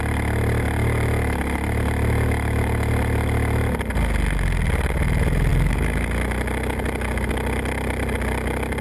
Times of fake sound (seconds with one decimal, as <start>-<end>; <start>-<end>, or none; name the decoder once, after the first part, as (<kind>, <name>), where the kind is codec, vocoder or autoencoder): none